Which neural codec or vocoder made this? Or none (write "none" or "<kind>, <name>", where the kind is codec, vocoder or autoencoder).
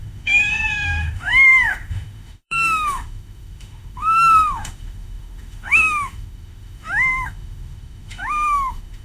autoencoder, DAC-VAE